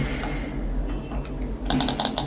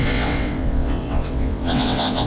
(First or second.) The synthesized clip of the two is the second